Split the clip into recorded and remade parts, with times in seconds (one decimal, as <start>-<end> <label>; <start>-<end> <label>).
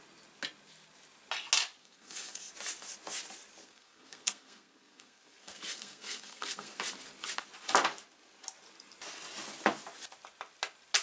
0.0-1.8 recorded; 1.8-2.5 remade; 2.5-3.6 recorded; 3.6-6.8 remade; 6.8-11.0 recorded